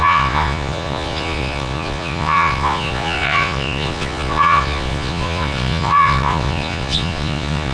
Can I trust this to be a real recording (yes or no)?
no